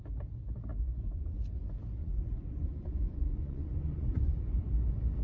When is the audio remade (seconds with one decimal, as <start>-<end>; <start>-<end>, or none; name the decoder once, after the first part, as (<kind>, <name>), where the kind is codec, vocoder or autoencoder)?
0.7-1.4 (vocoder, Vocos); 2.0-4.7